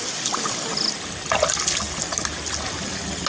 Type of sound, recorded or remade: recorded